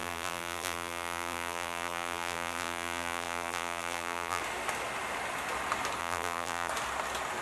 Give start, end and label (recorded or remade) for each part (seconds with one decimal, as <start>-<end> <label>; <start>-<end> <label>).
0.0-4.4 remade; 4.4-6.0 recorded; 6.0-6.7 remade; 6.7-7.4 recorded